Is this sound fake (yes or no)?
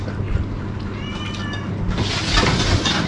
no